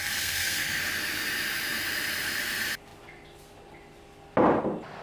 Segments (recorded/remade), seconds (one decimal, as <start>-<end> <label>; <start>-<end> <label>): 0.0-0.8 remade; 0.8-5.0 recorded